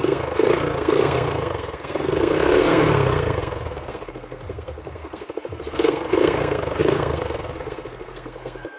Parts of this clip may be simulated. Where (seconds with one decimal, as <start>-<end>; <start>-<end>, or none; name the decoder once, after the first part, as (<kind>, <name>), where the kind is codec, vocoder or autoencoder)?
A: 0.0-8.8 (codec, SNAC)